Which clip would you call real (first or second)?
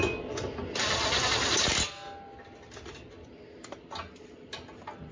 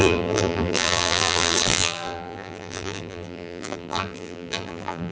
first